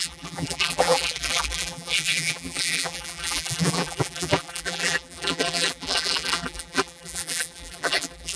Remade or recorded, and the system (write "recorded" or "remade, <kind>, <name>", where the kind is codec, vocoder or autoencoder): remade, vocoder, BigVGAN v2